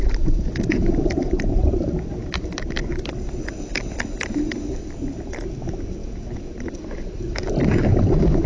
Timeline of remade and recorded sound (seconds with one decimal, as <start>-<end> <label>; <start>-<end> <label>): 0.0-6.0 recorded; 6.0-6.6 remade; 6.6-8.5 recorded